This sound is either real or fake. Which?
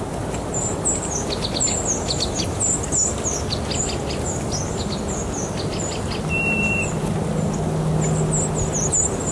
real